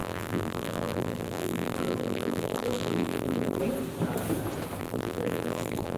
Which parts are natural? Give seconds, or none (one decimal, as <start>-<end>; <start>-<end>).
3.6-4.8